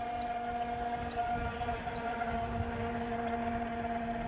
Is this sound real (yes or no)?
yes